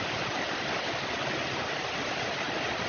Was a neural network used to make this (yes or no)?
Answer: no